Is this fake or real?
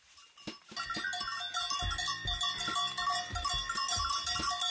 real